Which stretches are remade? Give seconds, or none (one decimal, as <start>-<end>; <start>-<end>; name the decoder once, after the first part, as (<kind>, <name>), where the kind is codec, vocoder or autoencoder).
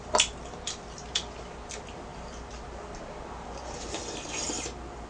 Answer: none